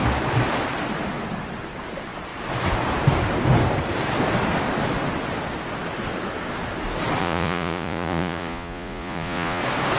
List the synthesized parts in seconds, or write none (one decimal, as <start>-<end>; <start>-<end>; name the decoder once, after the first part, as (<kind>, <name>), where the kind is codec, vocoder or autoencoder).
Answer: 7.2-9.6 (vocoder, Vocos)